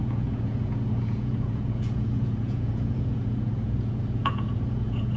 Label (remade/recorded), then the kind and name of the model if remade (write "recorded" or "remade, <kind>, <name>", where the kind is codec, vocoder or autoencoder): remade, vocoder, Vocos